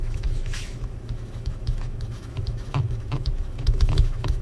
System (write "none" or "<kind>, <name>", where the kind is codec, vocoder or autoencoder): autoencoder, DAC-VAE